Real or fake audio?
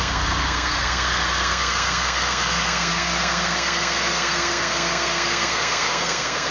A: fake